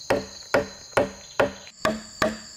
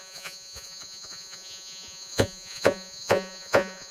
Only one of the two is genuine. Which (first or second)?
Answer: first